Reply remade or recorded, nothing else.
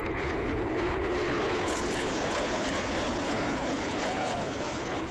remade